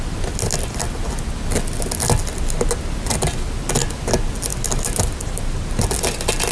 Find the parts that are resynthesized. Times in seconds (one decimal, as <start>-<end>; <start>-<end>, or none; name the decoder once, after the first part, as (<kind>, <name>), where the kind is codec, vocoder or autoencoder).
none